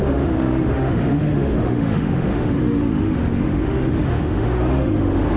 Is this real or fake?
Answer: fake